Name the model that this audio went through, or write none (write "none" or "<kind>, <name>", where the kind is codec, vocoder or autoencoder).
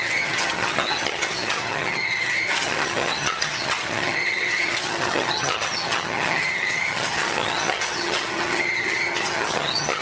vocoder, HiFi-GAN